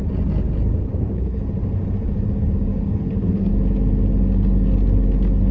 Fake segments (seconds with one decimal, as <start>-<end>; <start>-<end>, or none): 0.8-1.4; 2.7-3.5